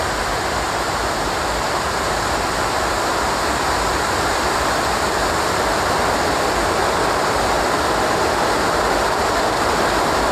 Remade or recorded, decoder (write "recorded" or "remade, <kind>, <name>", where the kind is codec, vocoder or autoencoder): remade, vocoder, BigVGAN v2